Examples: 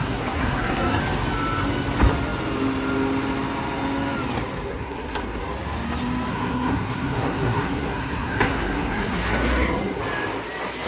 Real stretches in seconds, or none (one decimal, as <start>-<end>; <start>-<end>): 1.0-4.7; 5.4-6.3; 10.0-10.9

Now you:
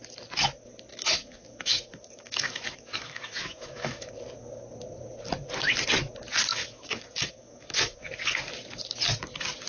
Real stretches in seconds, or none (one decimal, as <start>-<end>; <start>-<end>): 0.0-0.9; 4.1-6.5; 8.1-9.7

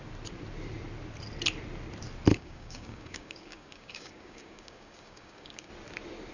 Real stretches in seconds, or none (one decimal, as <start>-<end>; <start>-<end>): 0.0-2.3; 5.7-6.3

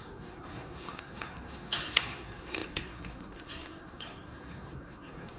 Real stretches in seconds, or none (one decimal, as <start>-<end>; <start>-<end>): none